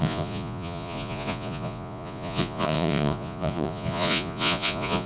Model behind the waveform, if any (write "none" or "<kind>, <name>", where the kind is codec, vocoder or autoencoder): vocoder, Vocos